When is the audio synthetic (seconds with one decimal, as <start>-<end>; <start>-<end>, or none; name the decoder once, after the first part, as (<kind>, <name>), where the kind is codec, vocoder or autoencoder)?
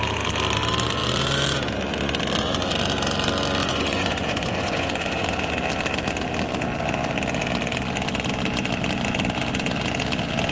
3.6-5.5 (vocoder, Vocos)